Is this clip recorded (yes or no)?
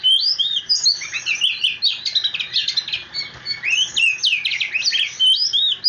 yes